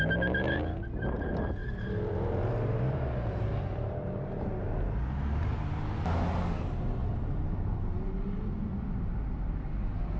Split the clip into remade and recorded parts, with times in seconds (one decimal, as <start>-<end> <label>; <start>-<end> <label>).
0.0-1.6 recorded; 1.6-4.7 remade; 4.7-7.0 recorded; 7.0-8.1 remade; 8.1-10.2 recorded